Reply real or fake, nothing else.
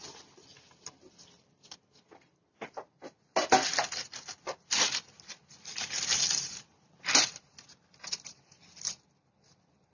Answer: real